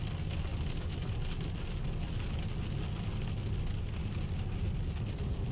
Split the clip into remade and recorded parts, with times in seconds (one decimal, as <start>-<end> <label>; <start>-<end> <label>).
0.0-5.5 recorded